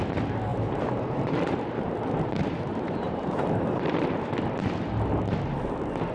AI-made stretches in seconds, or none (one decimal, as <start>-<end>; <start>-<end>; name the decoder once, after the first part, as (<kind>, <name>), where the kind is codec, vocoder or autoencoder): 0.5-4.2 (vocoder, BigVGAN v2)